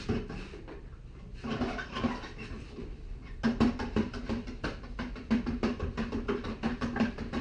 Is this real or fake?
real